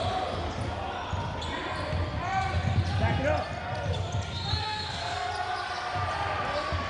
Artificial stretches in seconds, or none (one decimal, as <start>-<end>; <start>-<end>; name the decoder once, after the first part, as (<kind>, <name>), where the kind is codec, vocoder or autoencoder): 4.5-5.3 (codec, SNAC)